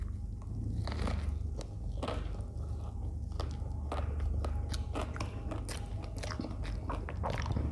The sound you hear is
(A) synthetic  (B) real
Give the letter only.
B